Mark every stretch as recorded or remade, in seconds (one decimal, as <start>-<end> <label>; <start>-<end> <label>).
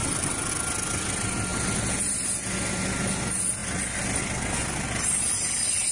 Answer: 0.0-0.5 remade; 0.5-5.9 recorded